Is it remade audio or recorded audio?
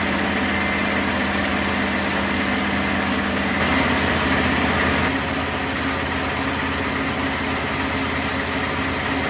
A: recorded